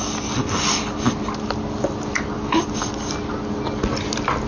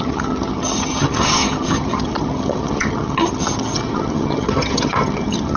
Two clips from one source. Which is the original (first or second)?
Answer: first